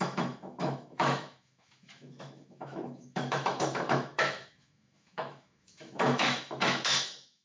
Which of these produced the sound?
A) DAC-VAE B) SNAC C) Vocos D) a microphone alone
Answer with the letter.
A